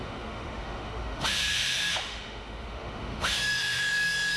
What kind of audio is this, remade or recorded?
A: remade